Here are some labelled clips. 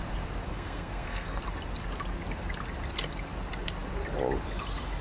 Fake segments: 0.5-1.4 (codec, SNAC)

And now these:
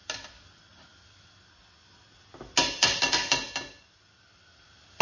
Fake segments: none

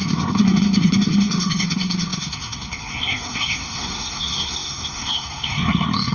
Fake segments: 0.0-6.1 (codec, SNAC)

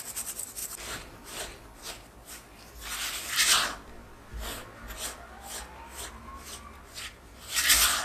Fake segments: none

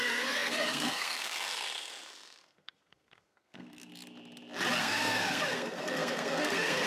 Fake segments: 0.0-3.9 (codec, SNAC); 4.8-6.9

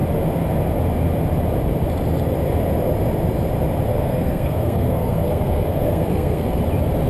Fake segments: 3.9-6.6 (codec, SNAC)

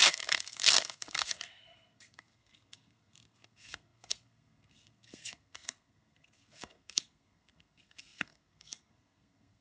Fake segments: 0.0-9.6 (codec, SNAC)